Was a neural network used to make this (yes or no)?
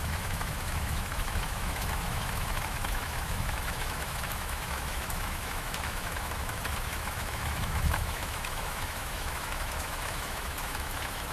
yes